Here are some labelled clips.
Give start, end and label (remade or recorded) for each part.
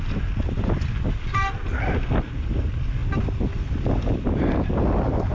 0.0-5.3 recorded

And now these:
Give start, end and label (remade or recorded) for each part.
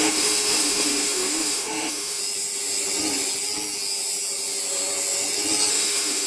0.0-2.2 remade; 2.2-5.7 recorded; 5.7-6.3 remade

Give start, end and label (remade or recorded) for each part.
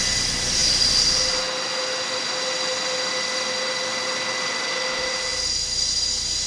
0.0-6.5 recorded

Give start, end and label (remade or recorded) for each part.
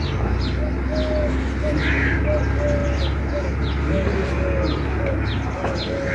0.0-6.1 recorded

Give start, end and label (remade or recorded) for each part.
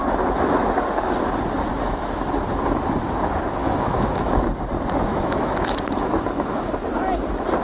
0.0-1.7 recorded; 1.7-2.2 remade; 2.2-3.6 recorded; 3.6-4.3 remade; 4.3-5.1 recorded; 5.1-6.7 remade; 6.7-7.6 recorded